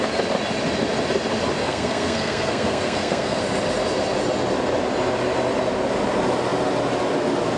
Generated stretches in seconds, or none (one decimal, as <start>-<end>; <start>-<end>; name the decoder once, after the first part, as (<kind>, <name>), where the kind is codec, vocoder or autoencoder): 1.6-3.4 (codec, SNAC)